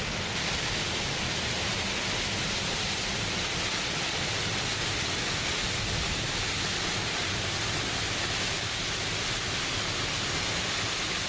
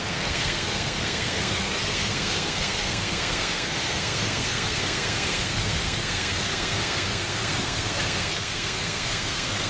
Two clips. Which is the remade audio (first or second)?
second